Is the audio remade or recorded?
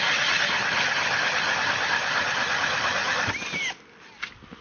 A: recorded